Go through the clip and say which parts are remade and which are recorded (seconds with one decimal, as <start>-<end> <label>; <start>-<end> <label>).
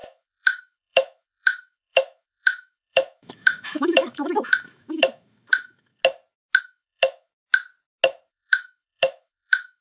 0.0-6.0 remade; 6.0-6.6 recorded; 6.6-7.3 remade; 7.3-8.3 recorded; 8.3-9.8 remade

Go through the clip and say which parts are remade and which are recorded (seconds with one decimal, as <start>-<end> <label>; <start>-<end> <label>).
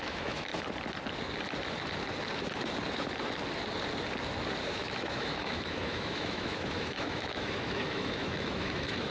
0.0-0.5 remade; 0.5-4.6 recorded; 4.6-9.1 remade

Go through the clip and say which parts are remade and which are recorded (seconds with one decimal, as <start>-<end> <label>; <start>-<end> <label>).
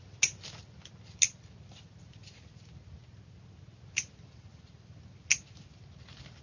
0.0-6.4 recorded